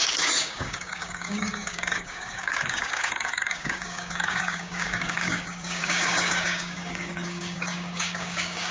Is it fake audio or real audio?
fake